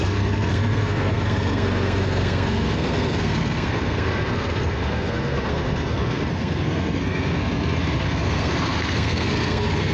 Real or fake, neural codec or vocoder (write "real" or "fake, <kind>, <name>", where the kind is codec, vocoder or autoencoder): fake, codec, SNAC